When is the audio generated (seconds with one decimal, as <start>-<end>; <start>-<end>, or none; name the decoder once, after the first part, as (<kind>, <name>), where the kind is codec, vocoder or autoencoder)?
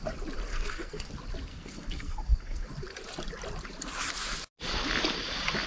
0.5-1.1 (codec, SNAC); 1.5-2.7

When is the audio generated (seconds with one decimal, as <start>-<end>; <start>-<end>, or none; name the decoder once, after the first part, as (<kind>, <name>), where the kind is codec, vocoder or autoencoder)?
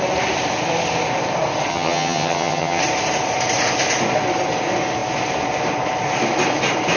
1.7-2.8 (vocoder, HiFi-GAN)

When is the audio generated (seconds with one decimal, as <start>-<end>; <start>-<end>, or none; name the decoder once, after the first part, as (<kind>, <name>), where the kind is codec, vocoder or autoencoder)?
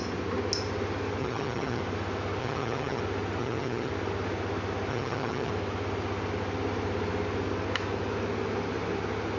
1.2-1.8 (vocoder, HiFi-GAN); 2.4-3.0; 3.4-3.9; 4.9-5.5